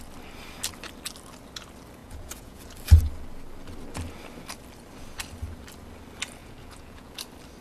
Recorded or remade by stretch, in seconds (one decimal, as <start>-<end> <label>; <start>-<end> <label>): 0.0-2.0 recorded; 2.0-2.6 remade; 2.6-6.4 recorded; 6.4-7.1 remade; 7.1-7.6 recorded

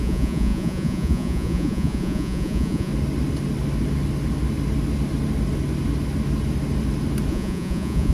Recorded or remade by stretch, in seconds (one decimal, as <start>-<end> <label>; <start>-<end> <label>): 0.0-2.9 remade; 2.9-7.3 recorded; 7.3-8.1 remade

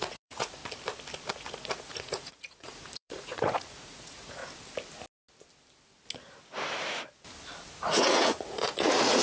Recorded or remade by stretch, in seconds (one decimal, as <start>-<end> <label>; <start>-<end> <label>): 0.0-0.6 remade; 0.6-1.3 recorded; 1.3-4.4 remade; 4.4-7.8 recorded; 7.8-9.2 remade

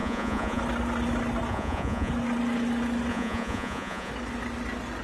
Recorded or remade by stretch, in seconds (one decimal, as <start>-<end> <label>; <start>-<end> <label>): 0.0-0.6 remade; 0.6-1.5 recorded; 1.5-2.1 remade; 2.1-3.1 recorded; 3.1-4.1 remade; 4.1-5.0 recorded

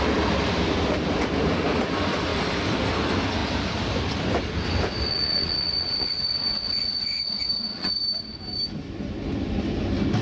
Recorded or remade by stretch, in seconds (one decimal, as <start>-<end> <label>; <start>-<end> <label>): 0.0-5.1 recorded; 5.1-7.9 remade; 7.9-10.2 recorded